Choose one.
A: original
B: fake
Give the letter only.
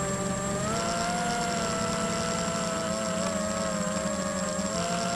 A